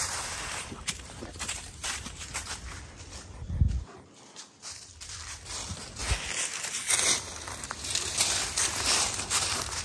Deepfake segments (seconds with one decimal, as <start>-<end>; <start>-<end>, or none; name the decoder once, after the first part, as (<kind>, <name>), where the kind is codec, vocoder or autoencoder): 0.0-2.3 (vocoder, BigVGAN v2)